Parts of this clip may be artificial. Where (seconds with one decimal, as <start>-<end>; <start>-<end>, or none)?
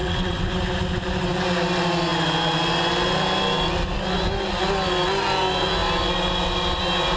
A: 0.0-0.5